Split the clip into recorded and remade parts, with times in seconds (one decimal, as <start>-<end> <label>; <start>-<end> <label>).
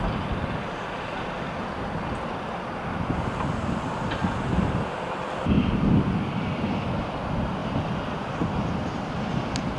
0.0-9.8 recorded